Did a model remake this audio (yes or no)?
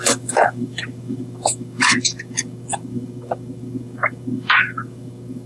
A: yes